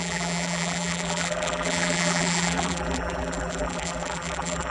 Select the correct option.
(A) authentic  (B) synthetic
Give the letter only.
B